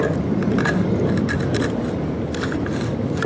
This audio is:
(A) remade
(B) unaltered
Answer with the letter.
B